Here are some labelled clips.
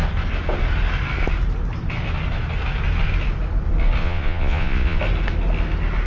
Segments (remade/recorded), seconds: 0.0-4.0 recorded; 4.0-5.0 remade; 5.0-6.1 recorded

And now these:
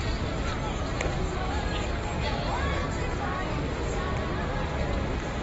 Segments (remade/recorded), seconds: 0.0-5.4 recorded

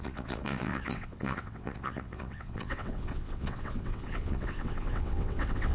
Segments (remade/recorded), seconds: 0.0-5.7 remade

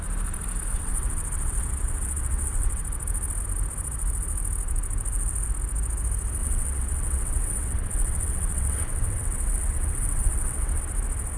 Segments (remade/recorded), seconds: 0.0-0.7 recorded; 0.7-2.8 remade; 2.8-6.4 recorded; 6.4-10.8 remade; 10.8-11.4 recorded